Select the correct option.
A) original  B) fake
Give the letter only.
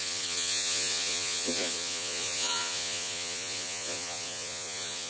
B